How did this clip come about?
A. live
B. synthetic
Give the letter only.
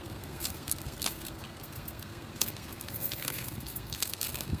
B